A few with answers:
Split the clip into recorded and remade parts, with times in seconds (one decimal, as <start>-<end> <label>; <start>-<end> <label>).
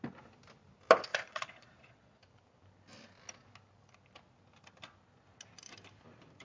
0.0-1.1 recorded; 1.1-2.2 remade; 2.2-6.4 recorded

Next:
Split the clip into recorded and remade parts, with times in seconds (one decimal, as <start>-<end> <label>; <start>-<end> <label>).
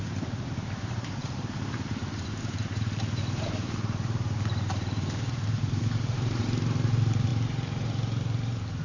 0.0-8.8 remade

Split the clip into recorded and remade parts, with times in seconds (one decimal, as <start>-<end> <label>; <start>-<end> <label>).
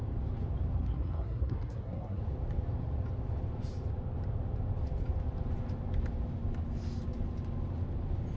0.0-0.8 recorded; 0.8-2.2 remade; 2.2-8.4 recorded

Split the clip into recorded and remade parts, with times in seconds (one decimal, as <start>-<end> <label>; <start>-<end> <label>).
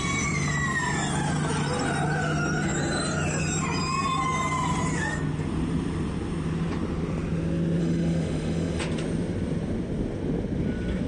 0.0-7.8 recorded; 7.8-8.8 remade; 8.8-11.1 recorded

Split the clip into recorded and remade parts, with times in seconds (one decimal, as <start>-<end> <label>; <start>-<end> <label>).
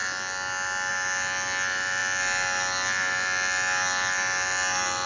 0.0-5.1 recorded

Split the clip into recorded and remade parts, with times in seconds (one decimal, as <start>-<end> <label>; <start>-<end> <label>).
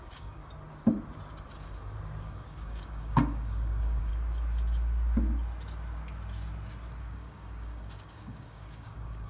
0.0-0.4 remade; 0.4-2.2 recorded; 2.2-4.1 remade; 4.1-7.0 recorded; 7.0-9.3 remade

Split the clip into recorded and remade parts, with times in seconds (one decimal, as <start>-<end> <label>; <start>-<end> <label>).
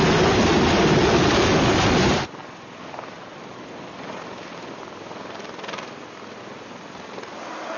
0.0-7.8 recorded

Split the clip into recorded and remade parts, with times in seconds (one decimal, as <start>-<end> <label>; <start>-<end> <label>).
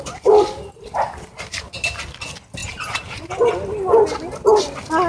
0.0-2.6 recorded; 2.6-3.5 remade; 3.5-5.1 recorded